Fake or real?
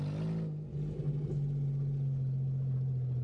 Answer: real